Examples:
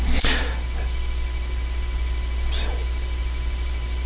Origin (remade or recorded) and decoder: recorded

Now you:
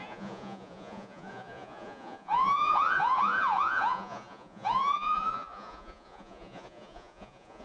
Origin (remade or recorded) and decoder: remade, vocoder, Vocos